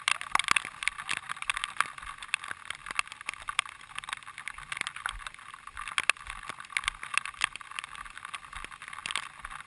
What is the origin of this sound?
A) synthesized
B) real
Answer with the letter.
B